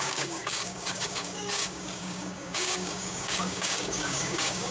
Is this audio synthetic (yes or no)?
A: yes